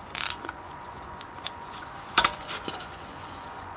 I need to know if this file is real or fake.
fake